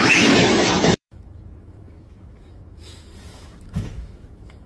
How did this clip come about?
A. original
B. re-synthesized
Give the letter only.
B